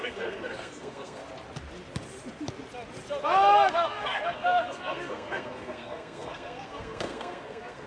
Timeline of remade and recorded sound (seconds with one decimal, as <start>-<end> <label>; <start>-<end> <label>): 0.0-1.2 remade; 1.2-3.7 recorded; 3.7-7.9 remade